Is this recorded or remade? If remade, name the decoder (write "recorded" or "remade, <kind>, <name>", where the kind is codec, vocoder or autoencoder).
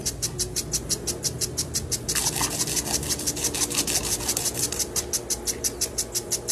recorded